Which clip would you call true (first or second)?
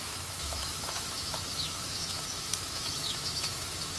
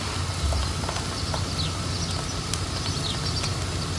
second